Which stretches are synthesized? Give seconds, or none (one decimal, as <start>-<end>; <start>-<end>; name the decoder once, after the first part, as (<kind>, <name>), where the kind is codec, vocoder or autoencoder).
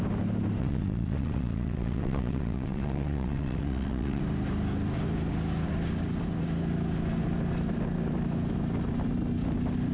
0.6-4.2 (vocoder, WaveNeXt)